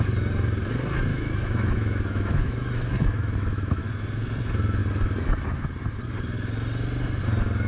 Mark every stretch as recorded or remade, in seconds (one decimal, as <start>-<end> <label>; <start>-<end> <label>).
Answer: 0.0-1.1 recorded; 1.1-3.8 remade; 3.8-7.7 recorded